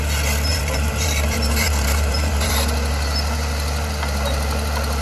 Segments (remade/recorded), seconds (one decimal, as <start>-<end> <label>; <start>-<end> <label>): 0.0-0.5 recorded; 0.5-2.5 remade; 2.5-5.0 recorded